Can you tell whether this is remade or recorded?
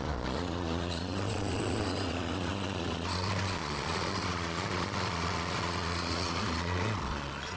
remade